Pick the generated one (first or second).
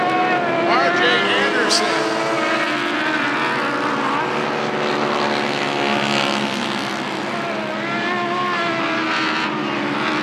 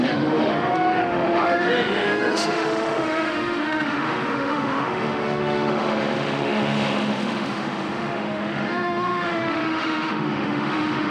second